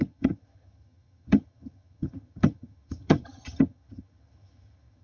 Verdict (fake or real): fake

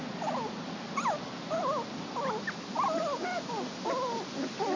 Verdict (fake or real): real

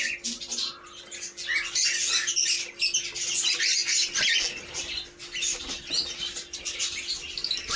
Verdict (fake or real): real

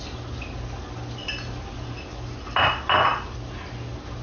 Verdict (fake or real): real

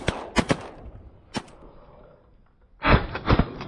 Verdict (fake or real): real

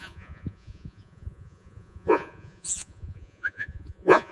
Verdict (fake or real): fake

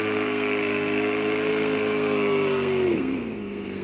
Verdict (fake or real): fake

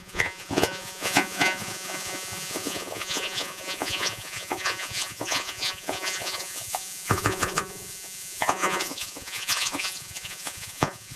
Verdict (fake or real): fake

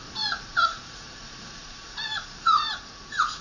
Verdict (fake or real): fake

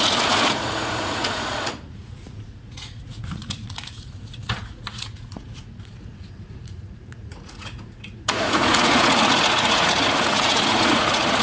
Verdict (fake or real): fake